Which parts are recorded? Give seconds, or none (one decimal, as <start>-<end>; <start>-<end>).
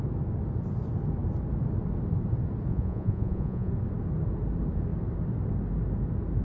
0.0-2.7; 3.7-6.4